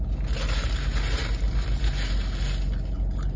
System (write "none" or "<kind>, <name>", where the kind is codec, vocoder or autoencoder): none